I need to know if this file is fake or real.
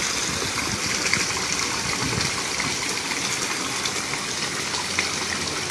real